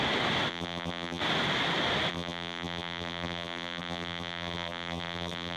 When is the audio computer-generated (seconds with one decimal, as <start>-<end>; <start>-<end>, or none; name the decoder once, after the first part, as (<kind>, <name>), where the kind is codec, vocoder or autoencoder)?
0.5-1.2 (vocoder, BigVGAN v2); 2.1-5.6